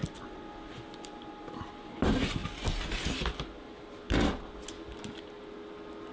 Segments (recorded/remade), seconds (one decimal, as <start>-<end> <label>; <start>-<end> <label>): 0.0-1.4 remade; 1.4-6.1 recorded